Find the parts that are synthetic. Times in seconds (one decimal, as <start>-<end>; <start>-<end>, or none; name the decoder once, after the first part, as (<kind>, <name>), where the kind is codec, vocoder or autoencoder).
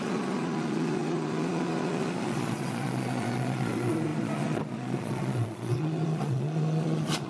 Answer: 0.0-7.3 (vocoder, Vocos)